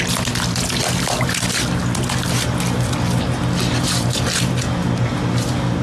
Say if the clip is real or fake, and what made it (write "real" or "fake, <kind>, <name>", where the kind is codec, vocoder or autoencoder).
real